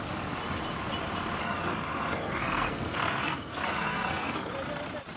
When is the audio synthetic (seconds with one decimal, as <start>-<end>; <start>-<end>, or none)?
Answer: 1.4-4.5